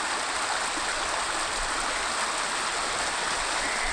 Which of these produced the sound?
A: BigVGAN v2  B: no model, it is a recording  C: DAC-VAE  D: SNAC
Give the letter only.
B